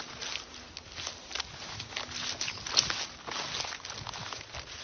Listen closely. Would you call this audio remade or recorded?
recorded